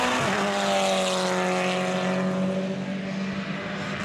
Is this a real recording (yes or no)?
yes